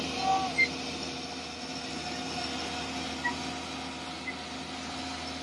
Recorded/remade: recorded